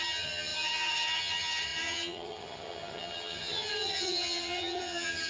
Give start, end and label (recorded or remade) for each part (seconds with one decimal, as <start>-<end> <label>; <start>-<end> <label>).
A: 0.0-5.3 remade